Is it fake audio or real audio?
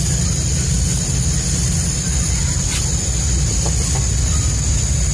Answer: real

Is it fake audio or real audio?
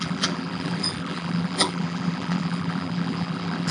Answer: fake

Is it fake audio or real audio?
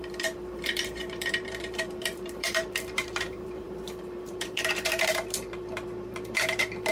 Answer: fake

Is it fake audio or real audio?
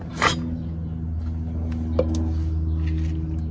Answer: real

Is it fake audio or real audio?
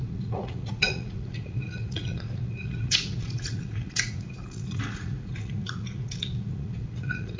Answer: fake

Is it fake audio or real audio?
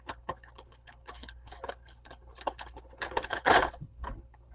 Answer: fake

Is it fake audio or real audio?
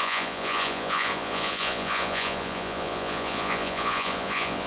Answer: fake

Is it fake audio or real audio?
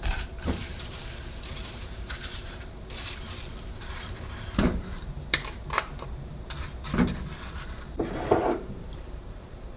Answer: fake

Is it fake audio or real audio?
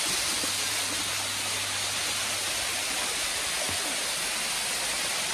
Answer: real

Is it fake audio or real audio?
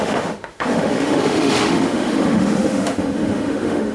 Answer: fake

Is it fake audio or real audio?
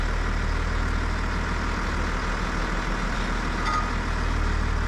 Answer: real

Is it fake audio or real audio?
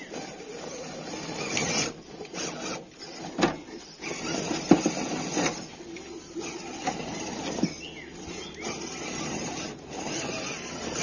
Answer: real